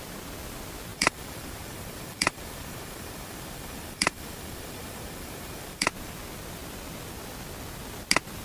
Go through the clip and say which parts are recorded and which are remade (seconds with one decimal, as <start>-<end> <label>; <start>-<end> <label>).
0.0-0.9 recorded; 0.9-5.9 remade; 5.9-8.4 recorded